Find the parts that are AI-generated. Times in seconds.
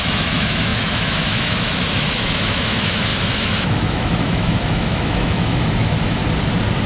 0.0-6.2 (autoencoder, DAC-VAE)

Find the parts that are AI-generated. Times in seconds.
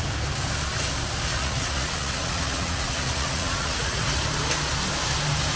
1.3-4.2 (vocoder, Vocos)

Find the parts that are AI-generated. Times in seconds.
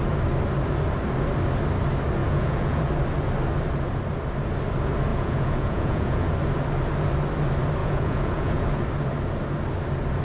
2.2-2.9 (vocoder, Vocos); 5.1-6.3; 7.8-8.8